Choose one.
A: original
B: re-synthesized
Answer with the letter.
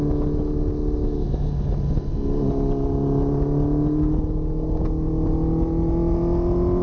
A